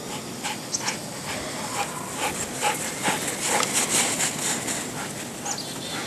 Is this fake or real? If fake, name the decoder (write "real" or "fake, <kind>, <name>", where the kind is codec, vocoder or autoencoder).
real